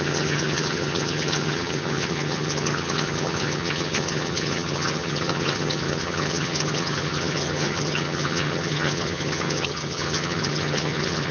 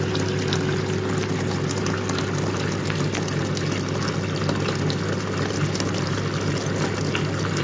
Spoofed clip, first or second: first